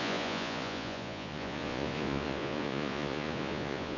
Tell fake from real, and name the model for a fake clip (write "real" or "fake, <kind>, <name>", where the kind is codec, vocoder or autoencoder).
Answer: fake, vocoder, Vocos